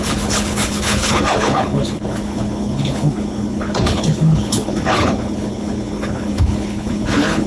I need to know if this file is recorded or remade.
remade